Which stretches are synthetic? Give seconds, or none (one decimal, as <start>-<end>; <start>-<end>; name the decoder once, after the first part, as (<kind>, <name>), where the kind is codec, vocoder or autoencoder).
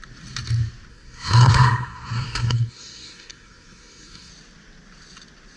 0.9-4.3 (codec, SNAC)